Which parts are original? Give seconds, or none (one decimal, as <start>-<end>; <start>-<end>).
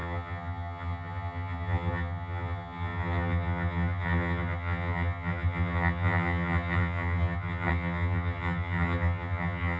none